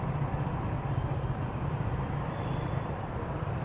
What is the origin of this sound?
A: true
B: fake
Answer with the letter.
B